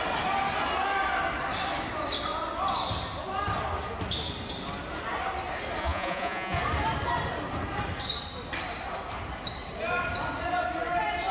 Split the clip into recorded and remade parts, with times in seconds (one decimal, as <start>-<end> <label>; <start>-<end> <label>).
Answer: 0.0-5.8 recorded; 5.8-6.6 remade; 6.6-11.3 recorded